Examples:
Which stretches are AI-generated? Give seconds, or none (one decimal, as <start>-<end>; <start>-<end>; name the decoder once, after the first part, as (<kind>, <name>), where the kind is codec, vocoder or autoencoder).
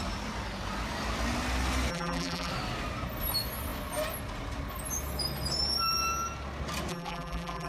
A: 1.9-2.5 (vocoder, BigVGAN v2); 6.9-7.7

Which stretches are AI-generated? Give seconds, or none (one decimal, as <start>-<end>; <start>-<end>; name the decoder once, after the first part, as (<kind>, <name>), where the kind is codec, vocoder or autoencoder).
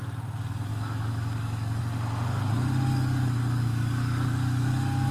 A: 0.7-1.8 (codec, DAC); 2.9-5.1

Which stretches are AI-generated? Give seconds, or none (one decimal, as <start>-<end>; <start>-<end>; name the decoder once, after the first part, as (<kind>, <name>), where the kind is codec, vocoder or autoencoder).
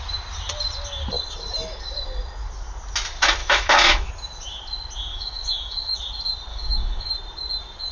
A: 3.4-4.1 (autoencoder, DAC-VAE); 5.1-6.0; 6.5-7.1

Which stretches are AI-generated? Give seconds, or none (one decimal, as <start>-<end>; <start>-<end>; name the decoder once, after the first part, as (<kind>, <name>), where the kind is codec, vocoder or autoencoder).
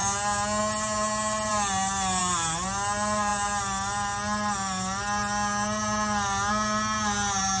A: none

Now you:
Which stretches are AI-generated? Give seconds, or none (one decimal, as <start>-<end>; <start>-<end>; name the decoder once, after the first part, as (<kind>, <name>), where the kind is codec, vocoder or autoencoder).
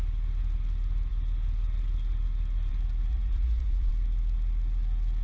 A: 3.1-3.9 (vocoder, Vocos)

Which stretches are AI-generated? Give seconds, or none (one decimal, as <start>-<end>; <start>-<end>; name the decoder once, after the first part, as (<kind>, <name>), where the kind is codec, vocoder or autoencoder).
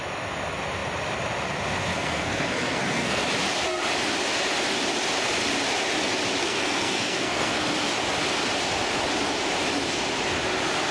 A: 1.9-3.2 (codec, SNAC); 6.4-7.5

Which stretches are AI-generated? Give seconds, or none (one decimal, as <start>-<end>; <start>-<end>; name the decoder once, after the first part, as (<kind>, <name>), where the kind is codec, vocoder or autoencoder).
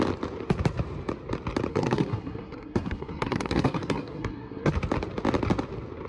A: 1.7-4.7 (codec, SNAC)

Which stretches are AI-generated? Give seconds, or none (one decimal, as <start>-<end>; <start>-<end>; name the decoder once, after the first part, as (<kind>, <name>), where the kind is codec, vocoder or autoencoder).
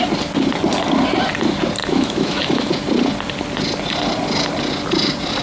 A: 1.8-2.7 (autoencoder, DAC-VAE)